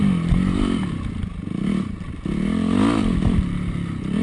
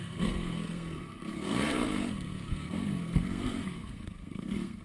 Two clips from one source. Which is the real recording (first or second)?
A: first